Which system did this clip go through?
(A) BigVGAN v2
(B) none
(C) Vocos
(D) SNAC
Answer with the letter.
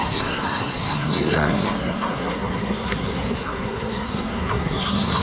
D